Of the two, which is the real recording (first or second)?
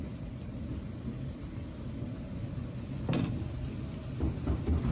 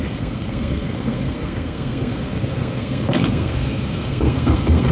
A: first